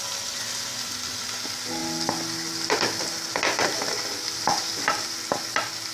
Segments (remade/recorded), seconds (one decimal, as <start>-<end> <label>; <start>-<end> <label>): 0.0-5.9 recorded

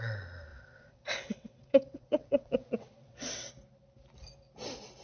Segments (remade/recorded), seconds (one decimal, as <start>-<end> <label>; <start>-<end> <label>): 0.0-0.5 recorded; 0.5-3.5 remade; 3.5-5.0 recorded

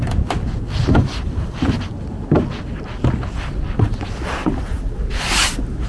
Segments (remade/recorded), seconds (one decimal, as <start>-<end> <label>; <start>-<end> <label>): 0.0-4.4 recorded; 4.4-5.2 remade; 5.2-5.9 recorded

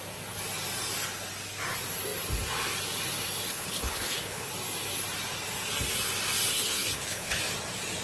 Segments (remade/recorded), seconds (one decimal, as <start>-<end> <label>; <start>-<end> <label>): 0.0-3.5 recorded; 3.5-4.5 remade; 4.5-6.5 recorded; 6.5-7.4 remade; 7.4-8.0 recorded

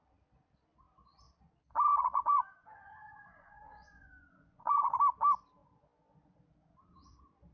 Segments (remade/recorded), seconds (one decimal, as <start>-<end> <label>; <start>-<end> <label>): 0.0-1.9 recorded; 1.9-5.0 remade; 5.0-7.5 recorded